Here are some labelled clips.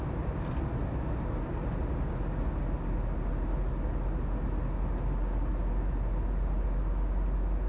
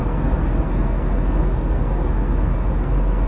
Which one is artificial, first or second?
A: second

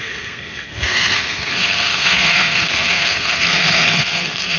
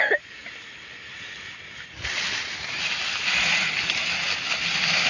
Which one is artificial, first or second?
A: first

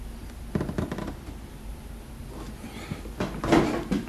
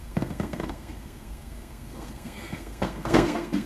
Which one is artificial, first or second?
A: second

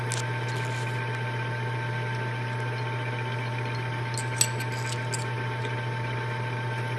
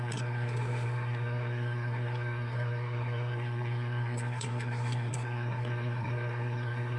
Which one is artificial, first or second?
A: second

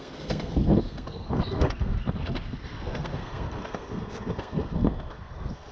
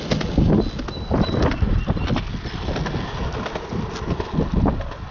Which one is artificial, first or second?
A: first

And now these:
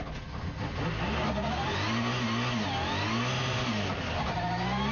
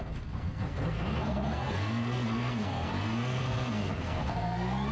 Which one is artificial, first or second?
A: second